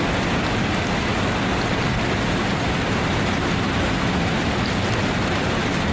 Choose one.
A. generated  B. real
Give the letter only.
B